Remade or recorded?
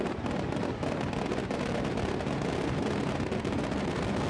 recorded